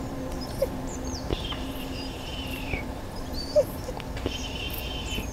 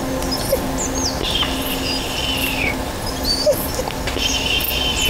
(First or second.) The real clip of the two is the second